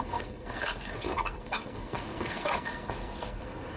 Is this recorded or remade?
remade